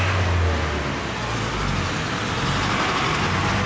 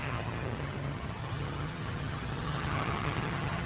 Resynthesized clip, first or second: second